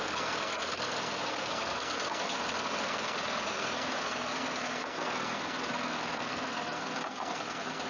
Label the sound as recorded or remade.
remade